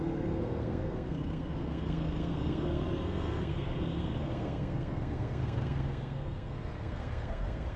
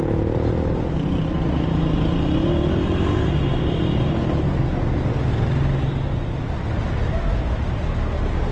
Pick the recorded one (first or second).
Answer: second